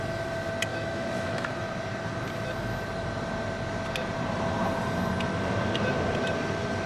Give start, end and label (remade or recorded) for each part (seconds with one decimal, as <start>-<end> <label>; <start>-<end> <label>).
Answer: 0.0-0.7 recorded; 0.7-1.5 remade; 1.5-6.9 recorded